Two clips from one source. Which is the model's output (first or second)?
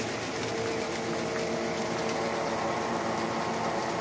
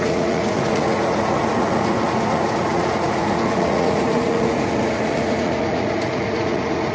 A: second